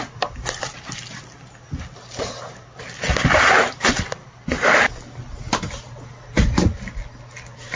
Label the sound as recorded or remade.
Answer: recorded